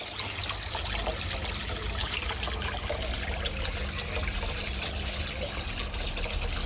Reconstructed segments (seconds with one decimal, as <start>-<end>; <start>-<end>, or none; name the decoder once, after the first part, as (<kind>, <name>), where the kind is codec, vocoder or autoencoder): none